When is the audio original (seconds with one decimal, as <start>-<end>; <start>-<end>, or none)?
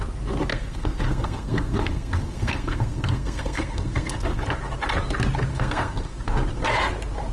0.0-0.5; 4.4-5.5; 6.3-7.3